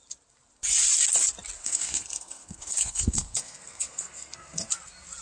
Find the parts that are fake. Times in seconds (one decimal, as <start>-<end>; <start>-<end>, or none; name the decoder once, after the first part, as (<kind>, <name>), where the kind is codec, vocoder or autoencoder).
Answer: 1.6-4.7 (codec, SNAC)